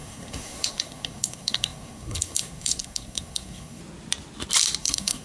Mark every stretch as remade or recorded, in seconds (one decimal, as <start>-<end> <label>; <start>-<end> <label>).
0.0-3.8 remade; 3.8-4.8 recorded; 4.8-5.2 remade